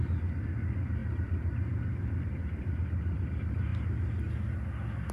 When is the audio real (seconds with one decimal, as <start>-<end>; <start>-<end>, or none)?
3.7-5.1